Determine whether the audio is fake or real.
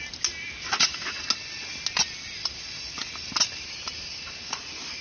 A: real